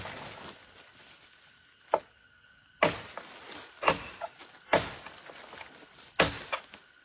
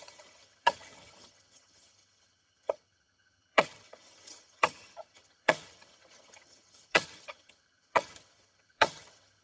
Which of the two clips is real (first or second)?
first